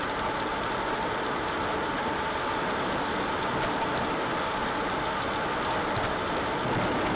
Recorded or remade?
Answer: recorded